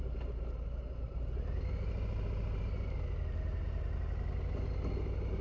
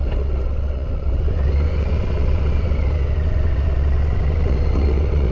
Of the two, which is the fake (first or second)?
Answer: second